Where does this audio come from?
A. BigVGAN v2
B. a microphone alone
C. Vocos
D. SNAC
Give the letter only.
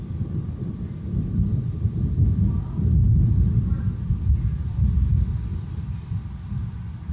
B